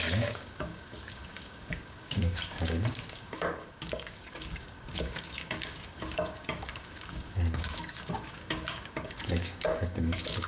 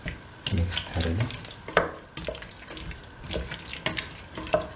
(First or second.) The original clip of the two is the second